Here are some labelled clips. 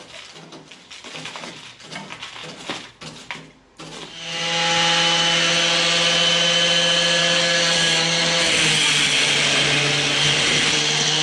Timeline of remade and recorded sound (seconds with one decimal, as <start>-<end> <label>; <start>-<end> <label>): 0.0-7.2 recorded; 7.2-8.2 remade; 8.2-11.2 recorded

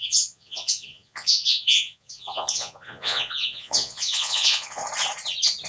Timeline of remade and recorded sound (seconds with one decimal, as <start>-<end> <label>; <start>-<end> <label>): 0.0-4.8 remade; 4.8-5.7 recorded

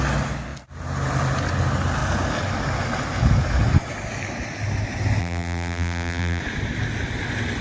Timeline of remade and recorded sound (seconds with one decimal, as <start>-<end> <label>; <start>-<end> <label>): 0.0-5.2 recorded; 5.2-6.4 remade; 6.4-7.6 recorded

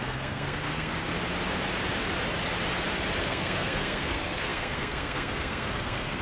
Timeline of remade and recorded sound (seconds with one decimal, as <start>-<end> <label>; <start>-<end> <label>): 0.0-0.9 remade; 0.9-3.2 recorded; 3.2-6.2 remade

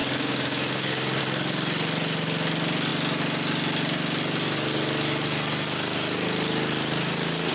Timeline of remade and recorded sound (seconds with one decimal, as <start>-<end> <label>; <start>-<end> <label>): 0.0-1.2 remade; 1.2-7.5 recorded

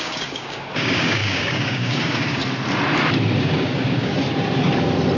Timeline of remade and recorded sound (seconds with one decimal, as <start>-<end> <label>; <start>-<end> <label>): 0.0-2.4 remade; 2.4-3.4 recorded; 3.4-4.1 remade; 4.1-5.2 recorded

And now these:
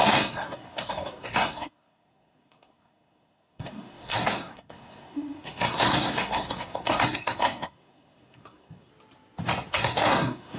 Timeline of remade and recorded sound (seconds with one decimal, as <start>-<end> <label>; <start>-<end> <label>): 0.0-8.9 remade; 8.9-9.7 recorded; 9.7-10.6 remade